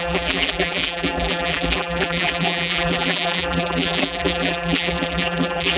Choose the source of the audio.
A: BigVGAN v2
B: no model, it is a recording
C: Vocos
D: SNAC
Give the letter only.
A